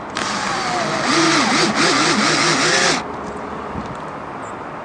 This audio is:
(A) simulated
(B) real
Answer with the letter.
B